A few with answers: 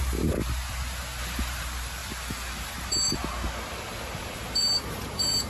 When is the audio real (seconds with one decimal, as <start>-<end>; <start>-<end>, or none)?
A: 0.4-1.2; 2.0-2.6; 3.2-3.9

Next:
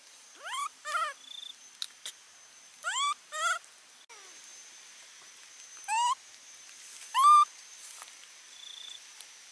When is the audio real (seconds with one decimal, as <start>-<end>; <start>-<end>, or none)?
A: 0.0-9.5

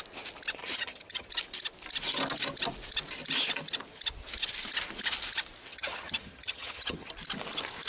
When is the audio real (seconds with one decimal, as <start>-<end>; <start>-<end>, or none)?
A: 0.0-0.6; 1.3-5.7; 7.1-7.9